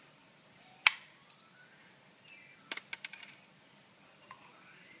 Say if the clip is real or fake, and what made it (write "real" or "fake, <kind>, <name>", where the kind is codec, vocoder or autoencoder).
real